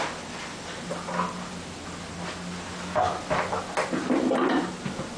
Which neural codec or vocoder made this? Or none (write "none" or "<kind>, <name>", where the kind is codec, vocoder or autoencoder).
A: none